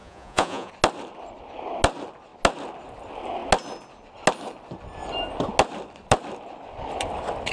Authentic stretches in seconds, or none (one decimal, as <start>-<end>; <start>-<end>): 0.7-7.5